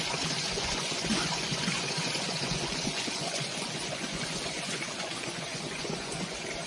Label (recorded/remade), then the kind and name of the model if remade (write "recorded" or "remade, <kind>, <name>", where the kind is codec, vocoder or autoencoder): remade, vocoder, Vocos